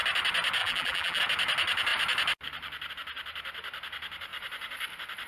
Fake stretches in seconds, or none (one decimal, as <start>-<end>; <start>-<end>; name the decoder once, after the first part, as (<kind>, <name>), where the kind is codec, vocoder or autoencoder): 0.6-1.2 (vocoder, BigVGAN v2)